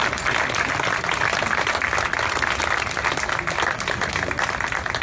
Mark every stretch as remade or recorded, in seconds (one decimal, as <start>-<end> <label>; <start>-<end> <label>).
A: 0.0-5.0 recorded